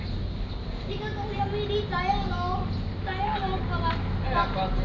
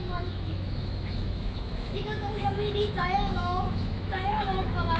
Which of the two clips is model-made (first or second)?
second